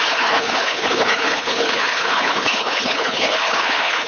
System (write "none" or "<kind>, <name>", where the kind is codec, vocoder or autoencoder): codec, HILCodec